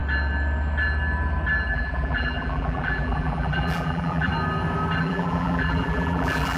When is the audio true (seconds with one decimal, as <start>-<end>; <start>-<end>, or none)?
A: 0.0-1.7; 4.3-5.0